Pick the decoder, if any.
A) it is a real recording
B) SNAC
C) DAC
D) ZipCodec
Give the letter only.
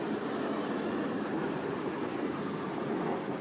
A